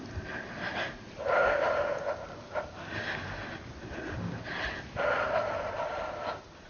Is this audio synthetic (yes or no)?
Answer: no